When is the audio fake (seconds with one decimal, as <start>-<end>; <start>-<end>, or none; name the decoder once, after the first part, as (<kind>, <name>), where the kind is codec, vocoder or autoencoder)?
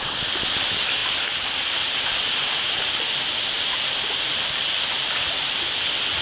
none